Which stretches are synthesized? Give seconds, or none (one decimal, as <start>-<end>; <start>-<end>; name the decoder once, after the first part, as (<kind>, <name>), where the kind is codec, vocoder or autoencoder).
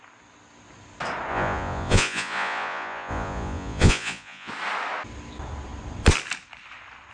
1.3-4.5 (vocoder, Vocos)